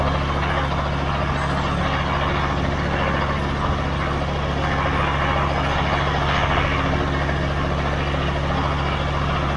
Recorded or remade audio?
recorded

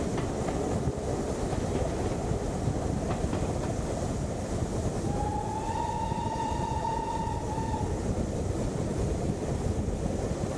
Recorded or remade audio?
recorded